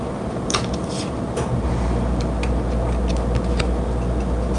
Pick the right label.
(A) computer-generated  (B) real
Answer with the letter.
B